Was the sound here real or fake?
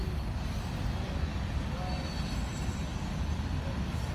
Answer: real